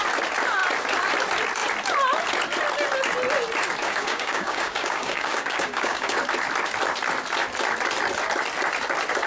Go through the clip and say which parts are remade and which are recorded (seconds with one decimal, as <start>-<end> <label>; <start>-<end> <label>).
0.0-3.8 recorded; 3.8-6.2 remade; 6.2-9.3 recorded